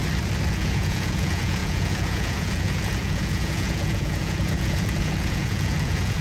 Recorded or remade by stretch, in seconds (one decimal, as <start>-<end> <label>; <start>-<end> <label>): 0.0-0.5 recorded; 0.5-6.2 remade